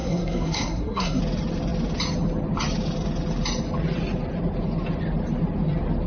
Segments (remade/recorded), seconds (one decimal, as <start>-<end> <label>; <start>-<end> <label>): 0.0-1.2 remade; 1.2-6.1 recorded

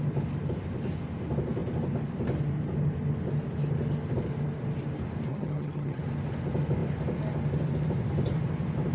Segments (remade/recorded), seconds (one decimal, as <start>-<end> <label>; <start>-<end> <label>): 0.0-5.3 recorded; 5.3-6.0 remade; 6.0-8.9 recorded

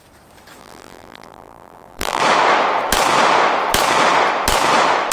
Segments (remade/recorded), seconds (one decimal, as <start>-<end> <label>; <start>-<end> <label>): 0.0-0.6 recorded; 0.6-2.2 remade; 2.2-5.1 recorded

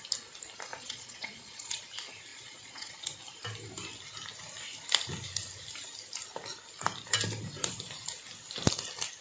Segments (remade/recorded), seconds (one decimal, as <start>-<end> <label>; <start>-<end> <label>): 0.0-0.7 recorded; 0.7-1.8 remade; 1.8-2.3 recorded; 2.3-3.2 remade; 3.2-9.2 recorded

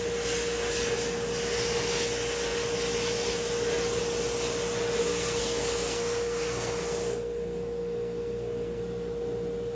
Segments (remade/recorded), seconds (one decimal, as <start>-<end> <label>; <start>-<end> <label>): 0.0-5.1 recorded; 5.1-8.8 remade; 8.8-9.8 recorded

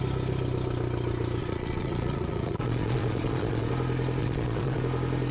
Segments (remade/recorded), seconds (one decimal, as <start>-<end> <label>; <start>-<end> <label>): 0.0-1.4 recorded; 1.4-3.7 remade; 3.7-4.2 recorded; 4.2-4.8 remade; 4.8-5.3 recorded

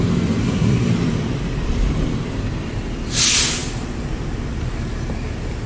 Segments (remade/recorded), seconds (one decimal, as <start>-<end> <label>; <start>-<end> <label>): 0.0-0.4 recorded; 0.4-0.9 remade; 0.9-5.7 recorded